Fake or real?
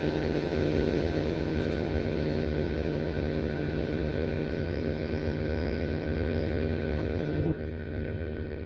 fake